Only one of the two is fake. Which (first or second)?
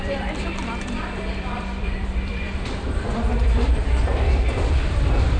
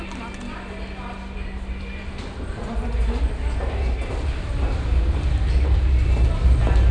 first